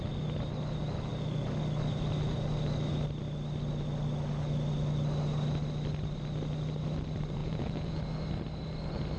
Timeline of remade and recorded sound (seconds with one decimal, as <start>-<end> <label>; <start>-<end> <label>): 0.0-7.4 recorded; 7.4-8.0 remade; 8.0-9.2 recorded